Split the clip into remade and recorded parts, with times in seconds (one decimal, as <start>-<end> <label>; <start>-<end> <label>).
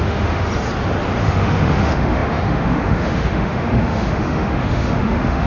0.0-0.5 remade; 0.5-1.2 recorded; 1.2-5.5 remade